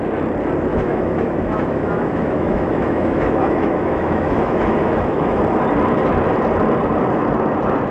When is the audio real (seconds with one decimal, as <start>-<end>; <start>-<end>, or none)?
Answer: 0.0-0.7; 5.4-7.9